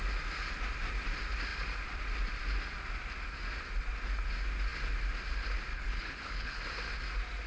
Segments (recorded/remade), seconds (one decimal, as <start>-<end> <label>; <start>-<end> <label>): 0.0-5.7 recorded; 5.7-6.6 remade; 6.6-7.5 recorded